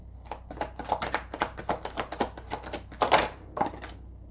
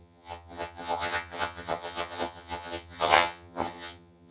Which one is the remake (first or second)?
second